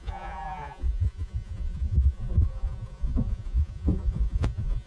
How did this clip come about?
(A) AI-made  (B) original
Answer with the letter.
A